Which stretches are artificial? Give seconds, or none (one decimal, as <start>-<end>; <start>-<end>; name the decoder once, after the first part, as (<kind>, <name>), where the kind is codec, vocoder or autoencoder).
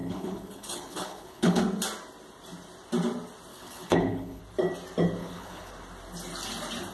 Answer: 0.0-1.6 (codec, HILCodec); 3.5-4.4; 5.2-5.7